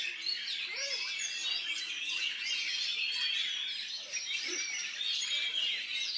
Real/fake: real